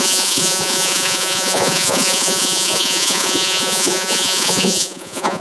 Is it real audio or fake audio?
fake